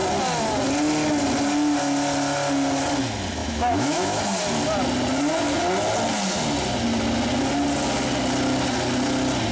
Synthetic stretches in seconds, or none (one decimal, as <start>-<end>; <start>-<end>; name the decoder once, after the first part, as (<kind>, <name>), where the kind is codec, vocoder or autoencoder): 3.4-4.2 (autoencoder, DAC-VAE)